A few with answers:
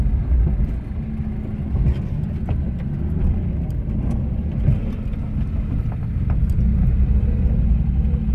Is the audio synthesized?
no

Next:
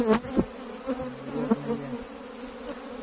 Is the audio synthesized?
no